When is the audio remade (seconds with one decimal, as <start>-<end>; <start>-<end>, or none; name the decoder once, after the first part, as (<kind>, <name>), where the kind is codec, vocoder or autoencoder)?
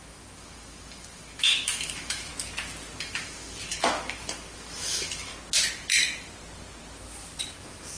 0.0-2.3 (autoencoder, DAC-VAE); 3.0-5.3; 7.6-8.0